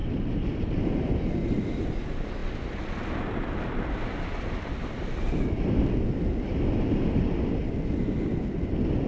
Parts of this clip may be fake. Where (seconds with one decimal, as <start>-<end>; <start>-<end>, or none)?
none